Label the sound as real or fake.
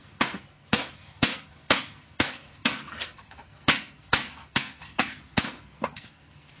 fake